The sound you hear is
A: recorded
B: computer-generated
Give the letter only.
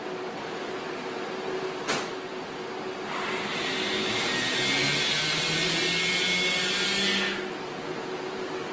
A